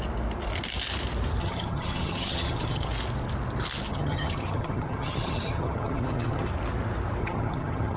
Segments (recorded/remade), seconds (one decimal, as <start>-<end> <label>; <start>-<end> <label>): 0.0-1.4 recorded; 1.4-2.9 remade; 2.9-3.9 recorded; 3.9-6.5 remade; 6.5-7.2 recorded; 7.2-8.0 remade